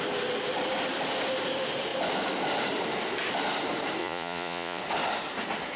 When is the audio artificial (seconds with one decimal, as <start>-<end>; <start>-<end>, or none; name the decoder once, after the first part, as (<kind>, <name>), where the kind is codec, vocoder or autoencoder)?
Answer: 4.0-4.8 (vocoder, Vocos)